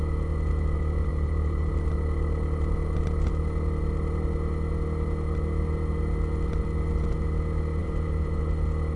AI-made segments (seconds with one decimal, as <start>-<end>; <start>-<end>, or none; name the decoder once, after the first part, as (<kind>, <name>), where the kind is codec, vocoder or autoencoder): 1.1-1.7 (vocoder, BigVGAN v2); 7.8-8.4